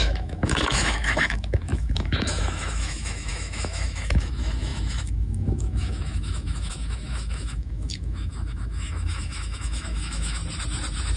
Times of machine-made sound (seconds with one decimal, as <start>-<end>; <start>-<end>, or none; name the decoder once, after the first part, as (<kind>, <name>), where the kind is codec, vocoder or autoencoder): 0.0-10.4 (autoencoder, DAC-VAE)